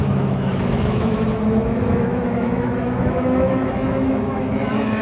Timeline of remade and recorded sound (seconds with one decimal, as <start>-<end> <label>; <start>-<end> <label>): 0.0-5.0 remade